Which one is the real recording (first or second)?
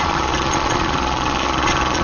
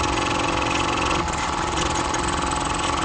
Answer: second